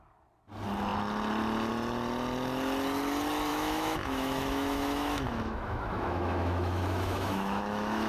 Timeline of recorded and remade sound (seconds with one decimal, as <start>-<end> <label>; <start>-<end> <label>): 0.0-3.5 recorded; 3.5-8.1 remade